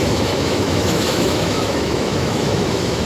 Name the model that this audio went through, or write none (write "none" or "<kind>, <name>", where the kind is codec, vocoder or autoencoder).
autoencoder, DAC-VAE